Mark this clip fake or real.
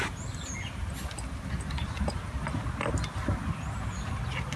real